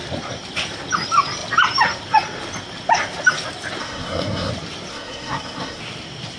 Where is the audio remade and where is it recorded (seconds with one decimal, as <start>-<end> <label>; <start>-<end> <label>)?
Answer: 0.0-3.8 recorded; 3.8-4.5 remade; 4.5-4.9 recorded; 4.9-5.8 remade; 5.8-6.4 recorded